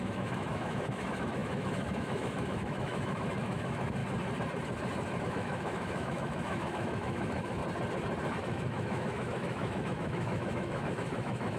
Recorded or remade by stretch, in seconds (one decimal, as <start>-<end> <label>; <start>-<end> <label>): 0.0-4.0 remade; 4.0-5.2 recorded; 5.2-7.6 remade; 7.6-8.4 recorded; 8.4-11.6 remade